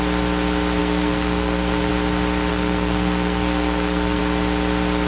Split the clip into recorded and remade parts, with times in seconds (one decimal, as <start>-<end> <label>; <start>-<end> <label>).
0.0-0.8 recorded; 0.8-1.9 remade; 1.9-2.5 recorded; 2.5-4.2 remade; 4.2-5.1 recorded